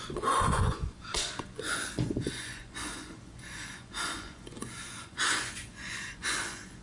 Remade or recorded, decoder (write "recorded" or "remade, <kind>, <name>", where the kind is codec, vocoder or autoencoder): remade, vocoder, Vocos